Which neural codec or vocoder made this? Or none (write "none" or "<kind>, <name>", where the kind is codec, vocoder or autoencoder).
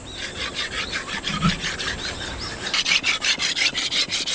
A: none